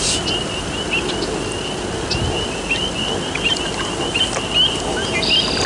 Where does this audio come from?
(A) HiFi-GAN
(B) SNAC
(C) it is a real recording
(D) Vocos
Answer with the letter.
C